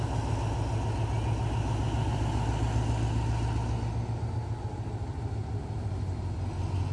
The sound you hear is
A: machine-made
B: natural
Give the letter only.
B